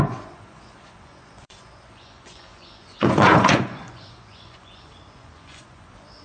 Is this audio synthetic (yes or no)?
yes